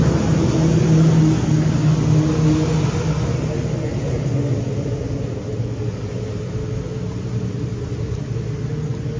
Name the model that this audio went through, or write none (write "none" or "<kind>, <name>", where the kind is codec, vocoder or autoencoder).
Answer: none